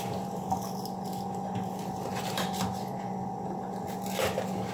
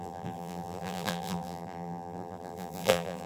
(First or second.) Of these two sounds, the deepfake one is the second